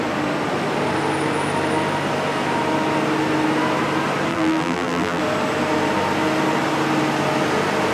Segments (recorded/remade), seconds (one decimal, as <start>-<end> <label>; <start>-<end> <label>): 0.0-4.3 recorded; 4.3-5.2 remade; 5.2-7.9 recorded